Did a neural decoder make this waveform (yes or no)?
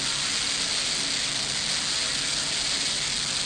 no